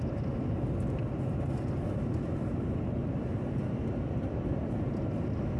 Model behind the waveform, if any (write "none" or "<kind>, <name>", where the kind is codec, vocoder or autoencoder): none